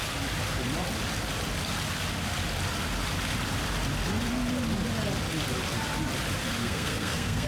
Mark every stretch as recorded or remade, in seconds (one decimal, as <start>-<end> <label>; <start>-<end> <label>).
0.0-6.6 recorded; 6.6-7.5 remade